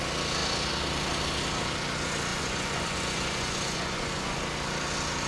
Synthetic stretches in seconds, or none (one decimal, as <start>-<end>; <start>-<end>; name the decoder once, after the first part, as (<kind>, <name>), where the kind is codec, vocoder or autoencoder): 2.3-4.4 (vocoder, Vocos)